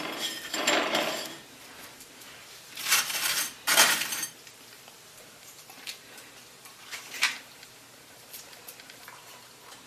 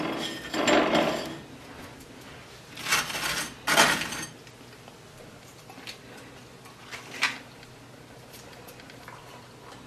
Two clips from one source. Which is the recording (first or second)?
second